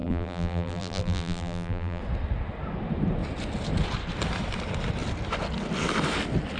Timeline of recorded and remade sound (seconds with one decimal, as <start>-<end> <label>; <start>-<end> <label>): 0.0-2.0 remade; 2.0-6.6 recorded